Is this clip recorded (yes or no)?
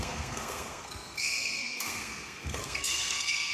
no